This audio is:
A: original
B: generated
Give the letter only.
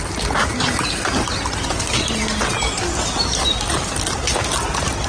A